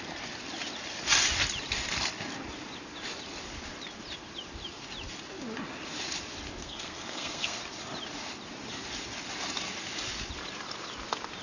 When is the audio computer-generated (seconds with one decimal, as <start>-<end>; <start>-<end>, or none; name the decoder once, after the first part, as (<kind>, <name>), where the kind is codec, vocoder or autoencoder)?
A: 6.6-7.6 (codec, SNAC)